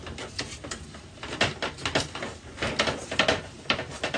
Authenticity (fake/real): real